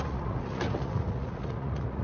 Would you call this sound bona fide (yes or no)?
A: no